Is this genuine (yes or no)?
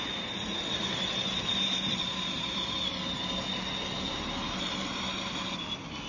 yes